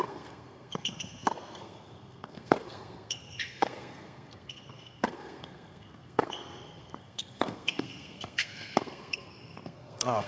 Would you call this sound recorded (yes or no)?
no